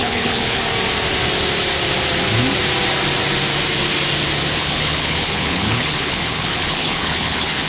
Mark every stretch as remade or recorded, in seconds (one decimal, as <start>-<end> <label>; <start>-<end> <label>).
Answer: 0.0-0.6 remade; 0.6-4.6 recorded; 4.6-7.7 remade